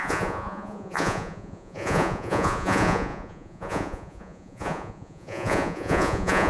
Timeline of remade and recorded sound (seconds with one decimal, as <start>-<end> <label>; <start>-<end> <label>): 0.0-6.5 remade